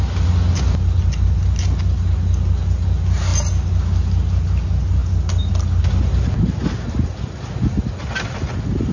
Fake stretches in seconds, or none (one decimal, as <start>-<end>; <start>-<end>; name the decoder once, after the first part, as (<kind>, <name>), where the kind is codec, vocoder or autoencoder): none